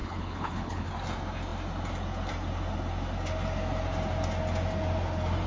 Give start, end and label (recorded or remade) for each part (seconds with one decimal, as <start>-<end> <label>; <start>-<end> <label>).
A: 0.0-0.9 remade; 0.9-5.5 recorded

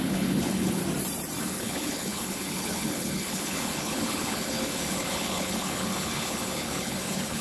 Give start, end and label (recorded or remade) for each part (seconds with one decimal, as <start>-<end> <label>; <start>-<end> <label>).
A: 0.0-0.8 remade; 0.8-1.4 recorded; 1.4-7.4 remade

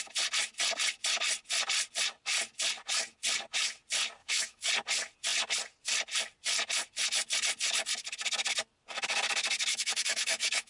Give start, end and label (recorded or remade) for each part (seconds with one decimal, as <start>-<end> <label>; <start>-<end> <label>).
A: 0.0-4.2 recorded; 4.2-4.7 remade; 4.7-9.7 recorded; 9.7-10.7 remade

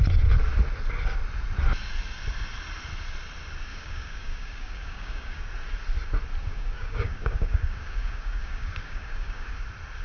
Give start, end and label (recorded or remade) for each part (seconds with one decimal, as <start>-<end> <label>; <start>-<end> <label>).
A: 0.0-3.7 recorded; 3.7-5.4 remade; 5.4-6.4 recorded; 6.4-9.6 remade; 9.6-10.0 recorded

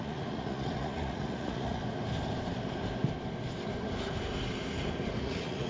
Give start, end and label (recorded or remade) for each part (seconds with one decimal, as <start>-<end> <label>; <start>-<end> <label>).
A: 0.0-1.8 remade; 1.8-5.2 recorded; 5.2-5.7 remade